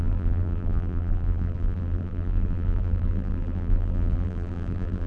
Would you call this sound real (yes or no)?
no